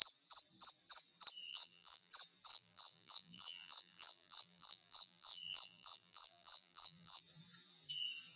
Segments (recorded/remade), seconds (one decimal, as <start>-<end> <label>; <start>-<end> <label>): 0.0-1.5 recorded; 1.5-2.1 remade; 2.1-2.5 recorded; 2.5-7.2 remade; 7.2-8.4 recorded